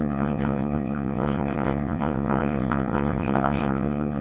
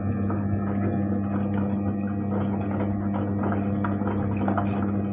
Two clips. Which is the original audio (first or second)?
second